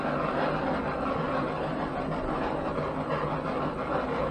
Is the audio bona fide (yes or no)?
yes